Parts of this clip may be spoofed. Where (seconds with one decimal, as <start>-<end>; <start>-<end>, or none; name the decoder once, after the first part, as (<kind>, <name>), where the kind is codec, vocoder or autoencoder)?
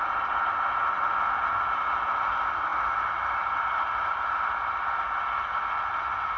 none